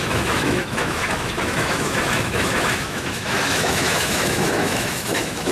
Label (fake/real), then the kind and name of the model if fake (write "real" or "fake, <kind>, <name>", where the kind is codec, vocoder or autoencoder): fake, autoencoder, DAC-VAE